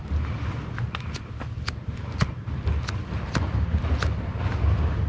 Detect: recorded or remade recorded